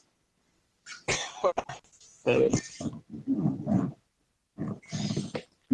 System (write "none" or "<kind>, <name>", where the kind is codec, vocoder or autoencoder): none